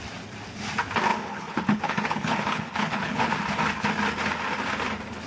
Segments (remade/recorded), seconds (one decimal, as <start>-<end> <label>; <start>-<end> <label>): 0.0-1.1 recorded; 1.1-3.3 remade; 3.3-5.3 recorded